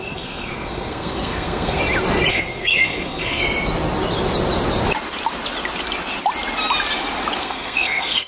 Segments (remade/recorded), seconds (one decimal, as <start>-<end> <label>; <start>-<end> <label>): 0.0-1.8 remade; 1.8-2.3 recorded; 2.3-3.4 remade; 3.4-7.4 recorded; 7.4-8.3 remade